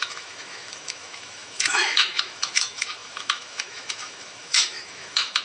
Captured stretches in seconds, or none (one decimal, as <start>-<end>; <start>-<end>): none